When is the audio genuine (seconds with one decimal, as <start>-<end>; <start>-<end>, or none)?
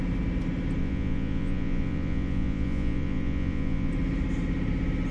0.0-0.8; 3.9-5.1